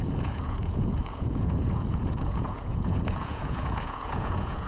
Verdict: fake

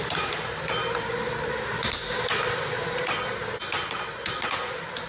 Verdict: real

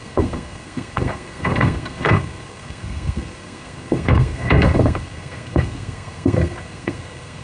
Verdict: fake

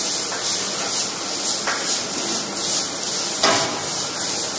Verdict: real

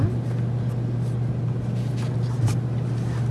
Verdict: real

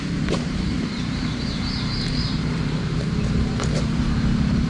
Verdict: fake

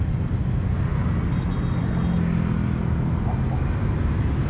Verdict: real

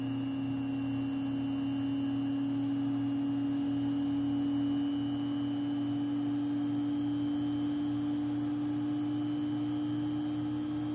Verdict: real